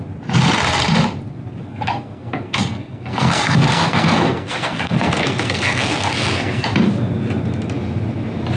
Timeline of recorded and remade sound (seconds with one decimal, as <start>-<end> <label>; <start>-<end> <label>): 0.0-1.6 recorded; 1.6-6.7 remade; 6.7-8.6 recorded